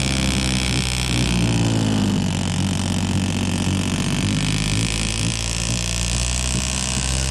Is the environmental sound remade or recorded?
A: recorded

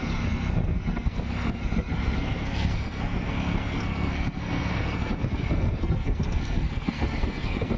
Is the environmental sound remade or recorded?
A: remade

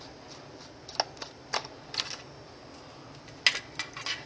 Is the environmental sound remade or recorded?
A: recorded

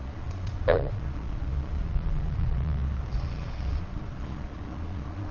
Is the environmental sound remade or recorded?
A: remade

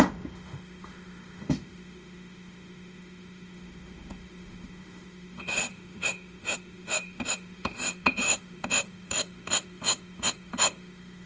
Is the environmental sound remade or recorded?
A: remade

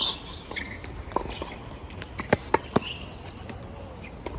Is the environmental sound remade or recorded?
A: recorded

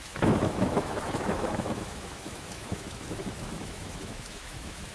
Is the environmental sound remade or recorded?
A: remade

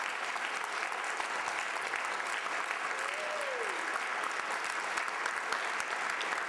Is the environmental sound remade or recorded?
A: recorded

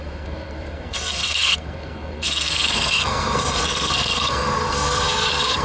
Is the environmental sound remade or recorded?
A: remade